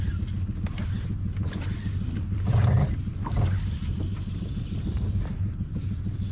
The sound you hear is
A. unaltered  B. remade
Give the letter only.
A